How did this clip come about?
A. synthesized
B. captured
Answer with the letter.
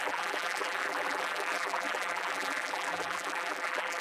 A